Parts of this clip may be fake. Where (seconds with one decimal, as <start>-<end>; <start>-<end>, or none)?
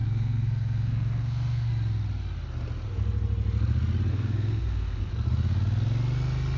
0.0-1.7; 4.1-5.1